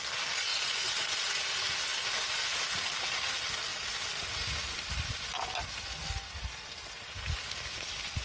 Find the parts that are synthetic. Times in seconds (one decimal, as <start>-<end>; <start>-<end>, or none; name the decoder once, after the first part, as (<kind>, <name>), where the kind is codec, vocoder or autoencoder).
none